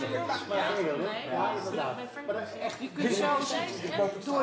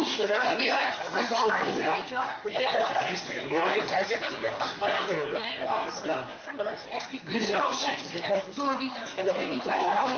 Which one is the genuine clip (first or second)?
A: first